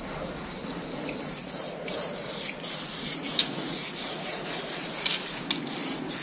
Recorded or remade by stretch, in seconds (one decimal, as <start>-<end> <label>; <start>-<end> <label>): 0.0-1.4 recorded; 1.4-2.1 remade; 2.1-3.2 recorded; 3.2-4.6 remade; 4.6-6.2 recorded